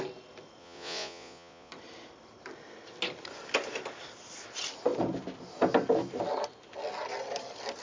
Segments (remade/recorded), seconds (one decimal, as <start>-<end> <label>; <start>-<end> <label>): 0.0-0.6 recorded; 0.6-1.7 remade; 1.7-7.8 recorded